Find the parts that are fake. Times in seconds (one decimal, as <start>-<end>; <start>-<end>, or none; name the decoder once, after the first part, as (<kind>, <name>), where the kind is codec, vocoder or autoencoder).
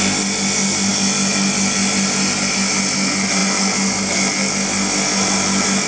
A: none